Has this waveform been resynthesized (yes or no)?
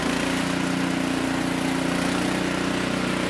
no